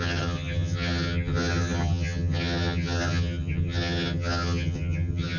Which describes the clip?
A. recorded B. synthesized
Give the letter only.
B